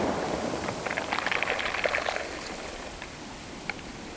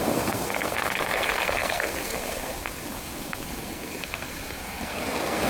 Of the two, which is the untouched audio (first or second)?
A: first